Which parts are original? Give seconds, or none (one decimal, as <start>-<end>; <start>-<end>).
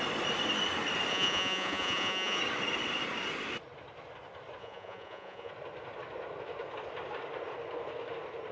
0.0-1.1; 2.4-4.6; 5.5-8.5